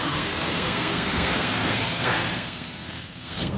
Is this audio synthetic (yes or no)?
yes